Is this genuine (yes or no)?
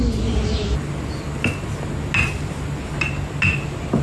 yes